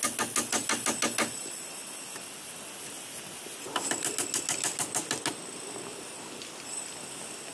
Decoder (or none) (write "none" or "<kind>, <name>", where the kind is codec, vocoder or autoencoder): none